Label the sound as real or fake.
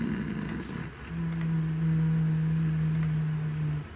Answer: real